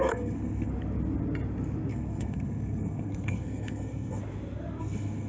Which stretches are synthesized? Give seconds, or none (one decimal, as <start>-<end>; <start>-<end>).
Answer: 0.0-0.7; 1.9-4.2; 4.8-5.3